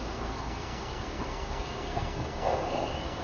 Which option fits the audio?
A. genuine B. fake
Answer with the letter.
B